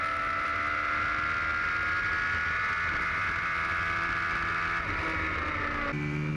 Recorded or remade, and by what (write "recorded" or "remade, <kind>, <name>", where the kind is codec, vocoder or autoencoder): recorded